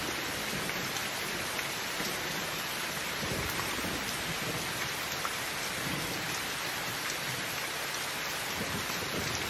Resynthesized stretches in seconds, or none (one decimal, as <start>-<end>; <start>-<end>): 1.0-3.8